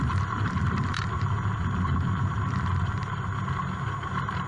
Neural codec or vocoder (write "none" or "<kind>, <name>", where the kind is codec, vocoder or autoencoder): none